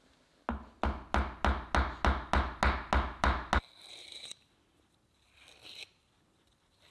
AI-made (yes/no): no